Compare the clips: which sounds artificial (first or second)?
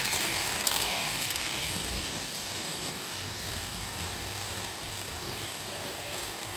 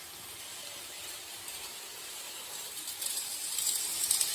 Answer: first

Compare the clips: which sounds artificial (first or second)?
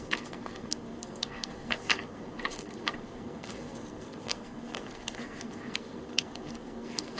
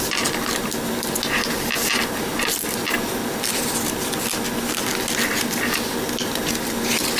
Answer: first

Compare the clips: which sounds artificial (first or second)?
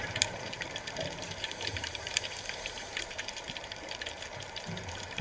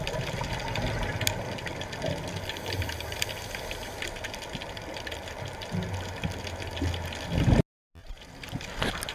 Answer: first